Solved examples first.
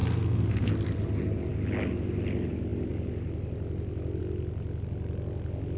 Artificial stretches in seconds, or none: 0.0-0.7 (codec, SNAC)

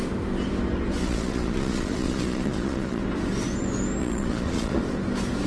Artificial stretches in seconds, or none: 1.0-3.0 (vocoder, Vocos); 4.0-4.8